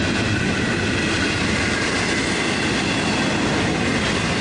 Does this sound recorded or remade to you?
recorded